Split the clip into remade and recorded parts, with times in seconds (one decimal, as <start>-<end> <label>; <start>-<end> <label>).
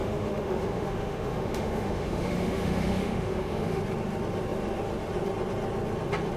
0.0-3.8 remade; 3.8-6.4 recorded